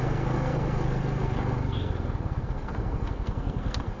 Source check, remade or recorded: remade